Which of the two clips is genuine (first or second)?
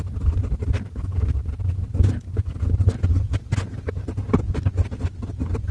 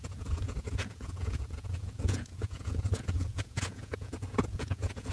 first